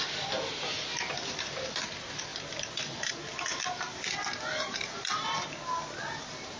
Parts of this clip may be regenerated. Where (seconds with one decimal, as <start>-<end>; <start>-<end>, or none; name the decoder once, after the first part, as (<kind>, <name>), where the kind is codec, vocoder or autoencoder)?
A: none